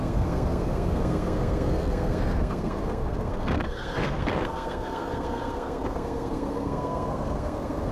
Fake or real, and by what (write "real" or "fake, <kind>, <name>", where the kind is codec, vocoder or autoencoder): fake, codec, SNAC